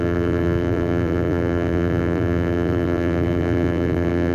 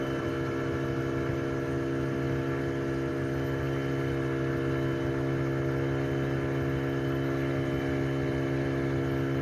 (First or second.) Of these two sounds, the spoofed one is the first